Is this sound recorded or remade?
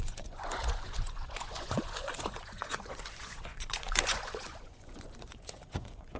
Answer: remade